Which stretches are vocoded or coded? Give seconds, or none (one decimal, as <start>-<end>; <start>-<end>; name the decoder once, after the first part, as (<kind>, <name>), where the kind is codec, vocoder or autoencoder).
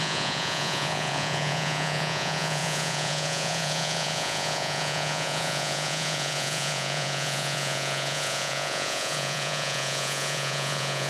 0.0-11.1 (vocoder, Vocos)